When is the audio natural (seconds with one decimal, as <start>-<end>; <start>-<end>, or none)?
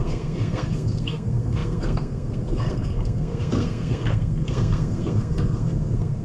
none